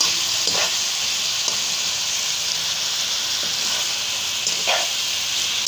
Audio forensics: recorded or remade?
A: recorded